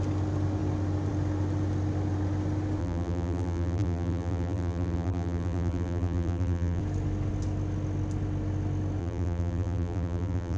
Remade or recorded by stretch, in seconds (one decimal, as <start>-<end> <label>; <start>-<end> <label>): 0.0-2.8 recorded; 2.8-6.8 remade; 6.8-9.0 recorded; 9.0-10.6 remade